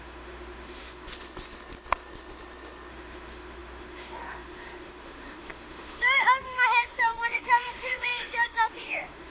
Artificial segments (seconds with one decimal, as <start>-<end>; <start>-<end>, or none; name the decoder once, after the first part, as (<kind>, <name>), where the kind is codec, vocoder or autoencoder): 0.0-1.1 (autoencoder, DAC-VAE); 2.9-9.3